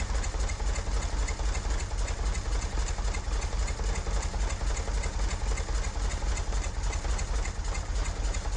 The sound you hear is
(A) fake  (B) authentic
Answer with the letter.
B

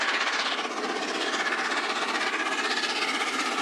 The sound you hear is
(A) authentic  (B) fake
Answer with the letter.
A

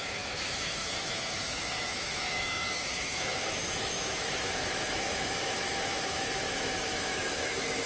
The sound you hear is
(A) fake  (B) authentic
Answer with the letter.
A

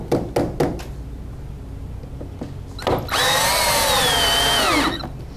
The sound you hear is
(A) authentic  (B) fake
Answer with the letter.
A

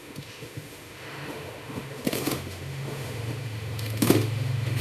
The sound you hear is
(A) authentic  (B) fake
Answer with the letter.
B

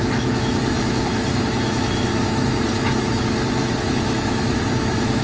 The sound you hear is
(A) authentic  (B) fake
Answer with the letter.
B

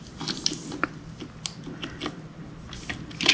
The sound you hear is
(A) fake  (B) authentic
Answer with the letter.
B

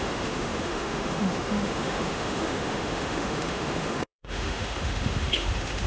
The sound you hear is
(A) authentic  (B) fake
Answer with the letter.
B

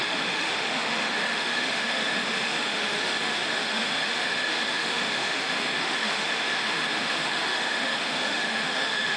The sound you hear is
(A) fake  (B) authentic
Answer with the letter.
A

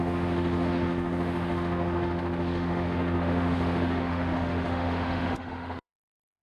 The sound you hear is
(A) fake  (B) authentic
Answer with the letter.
A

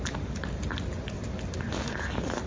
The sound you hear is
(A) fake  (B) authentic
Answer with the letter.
B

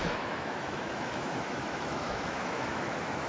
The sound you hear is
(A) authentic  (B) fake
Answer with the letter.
B